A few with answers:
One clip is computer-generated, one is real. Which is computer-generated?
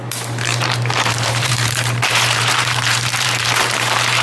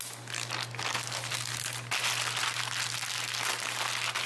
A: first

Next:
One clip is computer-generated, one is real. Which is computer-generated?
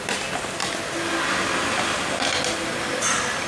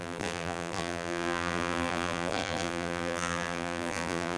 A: second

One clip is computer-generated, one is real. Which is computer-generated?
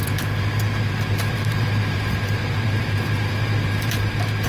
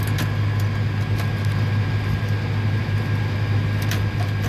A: first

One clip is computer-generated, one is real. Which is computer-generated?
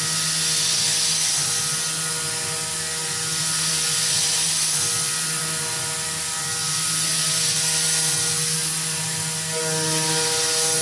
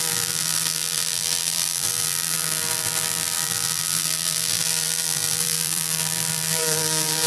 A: second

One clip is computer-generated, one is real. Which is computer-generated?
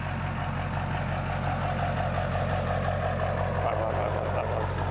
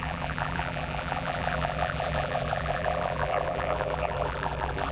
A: second